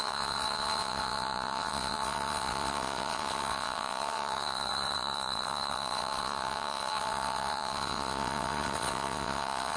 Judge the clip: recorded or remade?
remade